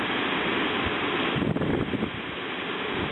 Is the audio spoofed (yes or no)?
no